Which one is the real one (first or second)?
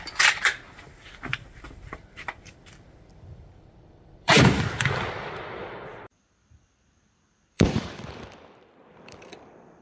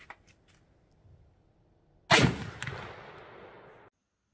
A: second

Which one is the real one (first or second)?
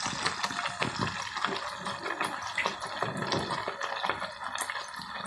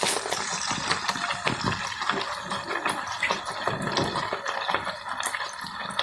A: first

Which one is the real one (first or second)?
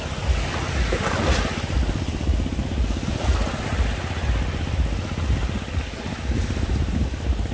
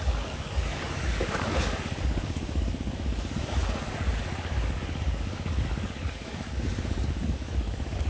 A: first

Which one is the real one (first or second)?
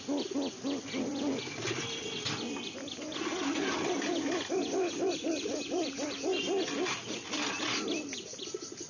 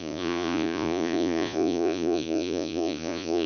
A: first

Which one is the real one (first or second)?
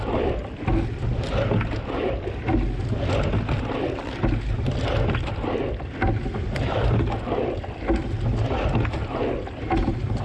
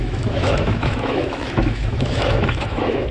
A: first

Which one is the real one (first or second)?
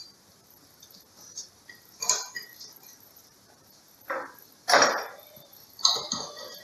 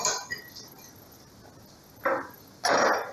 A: second